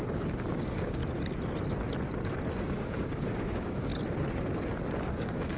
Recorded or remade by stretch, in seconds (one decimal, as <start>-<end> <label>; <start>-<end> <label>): 0.0-1.0 remade; 1.0-2.5 recorded; 2.5-3.9 remade; 3.9-5.1 recorded; 5.1-5.6 remade